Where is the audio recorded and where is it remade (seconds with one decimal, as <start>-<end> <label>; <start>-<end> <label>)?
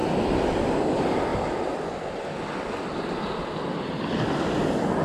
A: 0.0-5.0 recorded